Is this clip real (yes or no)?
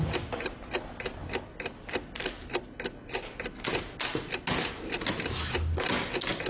yes